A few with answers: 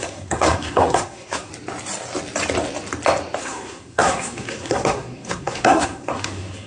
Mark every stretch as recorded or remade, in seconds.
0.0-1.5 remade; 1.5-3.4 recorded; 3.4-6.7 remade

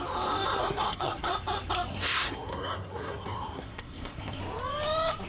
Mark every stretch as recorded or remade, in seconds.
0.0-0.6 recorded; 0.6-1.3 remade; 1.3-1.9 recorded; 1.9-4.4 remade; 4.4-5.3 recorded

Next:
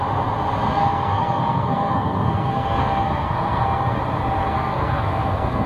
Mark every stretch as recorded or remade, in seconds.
0.0-0.7 recorded; 0.7-4.0 remade; 4.0-4.4 recorded; 4.4-5.7 remade